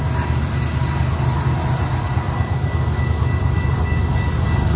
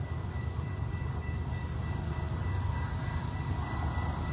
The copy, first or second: second